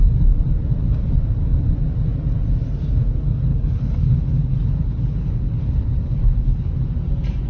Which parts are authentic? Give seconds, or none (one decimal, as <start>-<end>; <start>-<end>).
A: 0.0-3.5; 6.7-7.5